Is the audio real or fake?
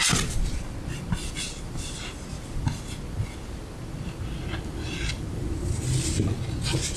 real